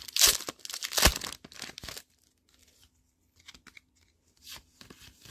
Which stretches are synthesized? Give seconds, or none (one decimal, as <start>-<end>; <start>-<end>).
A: none